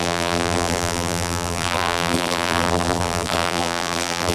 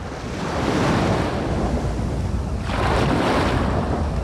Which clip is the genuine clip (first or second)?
second